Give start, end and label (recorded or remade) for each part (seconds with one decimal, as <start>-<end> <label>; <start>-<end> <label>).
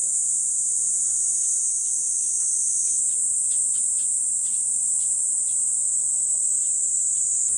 0.0-7.6 recorded